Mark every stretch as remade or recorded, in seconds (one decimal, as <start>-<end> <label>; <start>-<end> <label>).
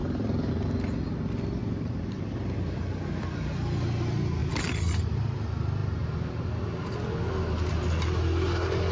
0.0-0.5 remade; 0.5-1.6 recorded; 1.6-3.5 remade; 3.5-4.4 recorded; 4.4-5.0 remade; 5.0-8.9 recorded